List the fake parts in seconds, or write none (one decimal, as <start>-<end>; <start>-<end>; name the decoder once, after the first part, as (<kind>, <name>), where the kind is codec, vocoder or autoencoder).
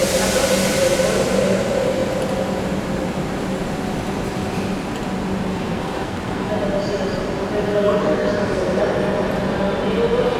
5.5-6.5 (codec, SNAC); 7.7-8.8